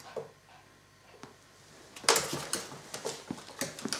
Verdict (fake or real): real